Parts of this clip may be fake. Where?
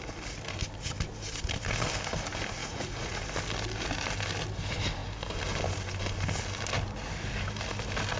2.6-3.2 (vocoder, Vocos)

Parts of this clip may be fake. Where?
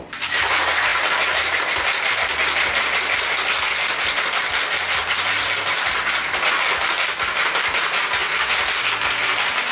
none